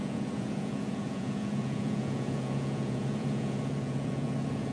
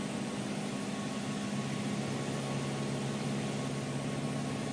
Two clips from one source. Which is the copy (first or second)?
first